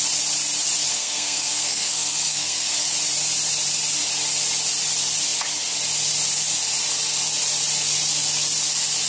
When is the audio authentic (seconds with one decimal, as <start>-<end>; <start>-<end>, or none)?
0.0-0.9; 2.7-9.1

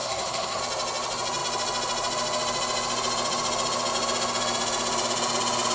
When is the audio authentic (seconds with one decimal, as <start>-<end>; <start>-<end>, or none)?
0.6-5.7

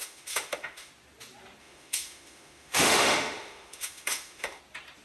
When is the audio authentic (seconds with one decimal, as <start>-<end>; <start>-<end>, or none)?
0.9-1.6; 4.6-5.0

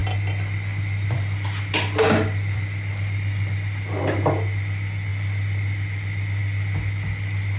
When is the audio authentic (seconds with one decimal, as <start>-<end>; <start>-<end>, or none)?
0.0-7.6